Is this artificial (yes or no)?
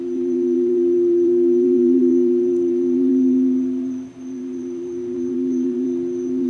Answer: yes